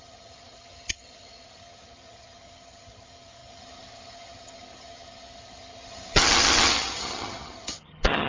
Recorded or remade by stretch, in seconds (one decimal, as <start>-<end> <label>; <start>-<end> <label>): 0.0-8.3 remade